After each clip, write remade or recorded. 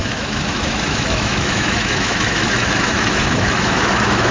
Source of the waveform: remade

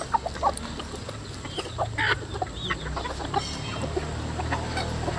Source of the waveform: recorded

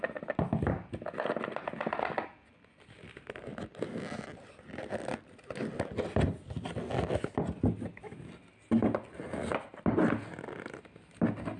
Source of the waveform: recorded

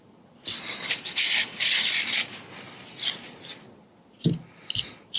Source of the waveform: recorded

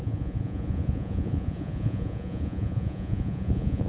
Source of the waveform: remade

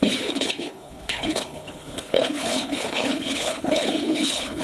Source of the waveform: remade